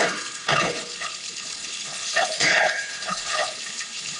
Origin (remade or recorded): remade